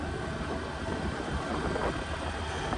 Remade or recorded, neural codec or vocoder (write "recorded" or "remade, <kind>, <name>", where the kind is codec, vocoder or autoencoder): recorded